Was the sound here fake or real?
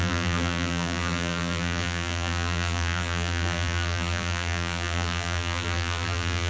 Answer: fake